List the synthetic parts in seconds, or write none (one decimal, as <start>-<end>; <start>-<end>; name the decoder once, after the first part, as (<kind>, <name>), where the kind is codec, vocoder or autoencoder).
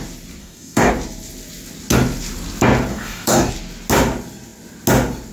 0.4-0.9 (codec, DAC); 2.9-3.5